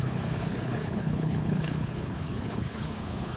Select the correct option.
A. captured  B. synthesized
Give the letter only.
B